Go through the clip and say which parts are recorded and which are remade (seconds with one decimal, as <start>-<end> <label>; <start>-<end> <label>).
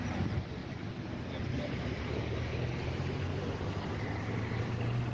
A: 0.0-5.1 recorded